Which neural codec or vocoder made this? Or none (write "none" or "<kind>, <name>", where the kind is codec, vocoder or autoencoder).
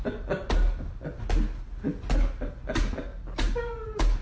none